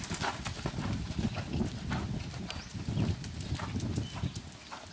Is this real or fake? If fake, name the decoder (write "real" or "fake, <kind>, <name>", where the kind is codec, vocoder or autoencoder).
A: real